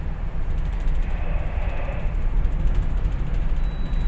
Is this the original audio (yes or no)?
no